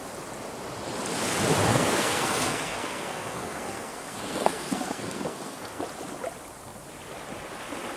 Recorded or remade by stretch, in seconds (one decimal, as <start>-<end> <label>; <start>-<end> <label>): 0.0-1.7 recorded; 1.7-5.8 remade; 5.8-8.0 recorded